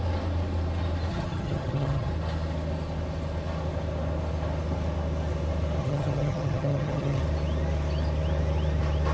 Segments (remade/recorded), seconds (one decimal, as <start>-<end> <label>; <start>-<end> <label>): 0.0-1.1 recorded; 1.1-2.1 remade; 2.1-5.8 recorded; 5.8-7.2 remade; 7.2-9.1 recorded